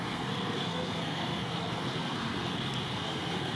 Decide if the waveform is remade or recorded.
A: remade